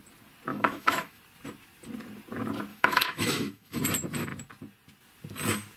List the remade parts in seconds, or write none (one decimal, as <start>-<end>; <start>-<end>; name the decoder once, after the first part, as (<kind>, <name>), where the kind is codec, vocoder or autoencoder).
0.5-1.2 (autoencoder, DAC-VAE); 2.7-3.8

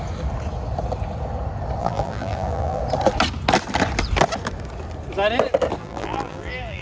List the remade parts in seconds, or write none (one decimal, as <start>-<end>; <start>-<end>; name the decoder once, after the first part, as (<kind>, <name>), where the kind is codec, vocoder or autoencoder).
1.8-2.8 (vocoder, BigVGAN v2); 5.8-6.8

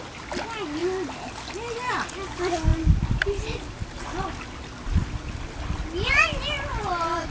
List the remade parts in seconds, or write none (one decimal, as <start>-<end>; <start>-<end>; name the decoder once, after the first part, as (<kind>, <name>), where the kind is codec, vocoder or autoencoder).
none

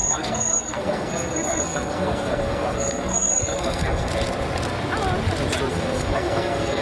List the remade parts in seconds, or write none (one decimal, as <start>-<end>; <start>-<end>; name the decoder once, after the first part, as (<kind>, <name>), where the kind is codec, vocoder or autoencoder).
0.0-4.1 (codec, SNAC); 5.7-6.8

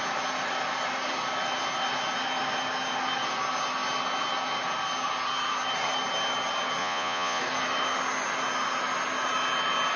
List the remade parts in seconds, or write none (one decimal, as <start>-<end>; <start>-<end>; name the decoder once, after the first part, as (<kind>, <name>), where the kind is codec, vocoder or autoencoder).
6.8-7.4 (vocoder, Vocos)

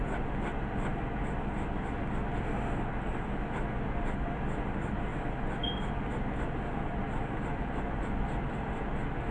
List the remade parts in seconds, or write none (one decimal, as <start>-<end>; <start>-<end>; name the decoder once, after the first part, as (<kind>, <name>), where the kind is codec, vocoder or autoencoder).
none